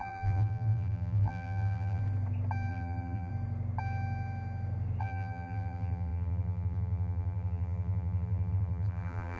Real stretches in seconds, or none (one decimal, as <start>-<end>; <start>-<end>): 2.0-2.7; 3.3-5.0

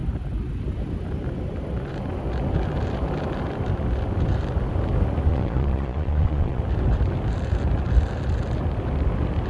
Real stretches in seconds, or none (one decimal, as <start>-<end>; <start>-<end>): 0.0-5.3; 6.6-9.5